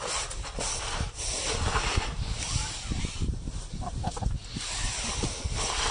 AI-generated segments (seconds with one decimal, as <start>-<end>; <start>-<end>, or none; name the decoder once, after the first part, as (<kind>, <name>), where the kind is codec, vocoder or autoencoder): none